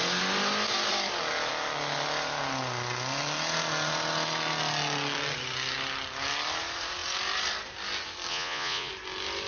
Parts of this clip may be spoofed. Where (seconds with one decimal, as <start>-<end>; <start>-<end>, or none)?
8.3-8.9